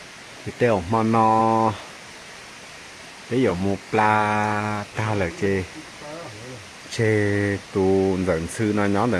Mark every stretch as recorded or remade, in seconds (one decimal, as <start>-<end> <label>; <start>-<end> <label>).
0.0-0.5 recorded; 0.5-1.4 remade; 1.4-3.5 recorded; 3.5-5.3 remade; 5.3-9.2 recorded